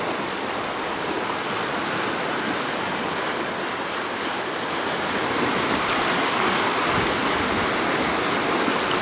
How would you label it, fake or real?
real